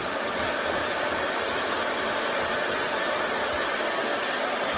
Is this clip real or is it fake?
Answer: real